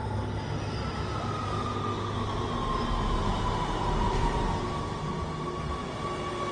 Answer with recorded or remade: recorded